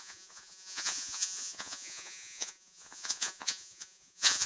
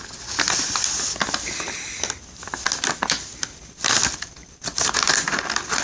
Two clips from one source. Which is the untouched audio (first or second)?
second